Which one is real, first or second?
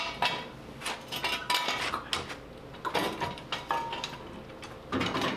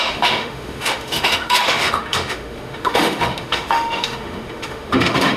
first